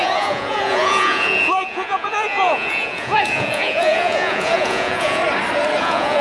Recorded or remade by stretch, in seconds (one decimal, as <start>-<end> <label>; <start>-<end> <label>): 0.0-5.2 remade; 5.2-5.8 recorded; 5.8-6.2 remade